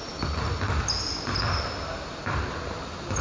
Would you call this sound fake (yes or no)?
no